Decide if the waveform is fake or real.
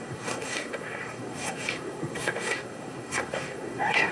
fake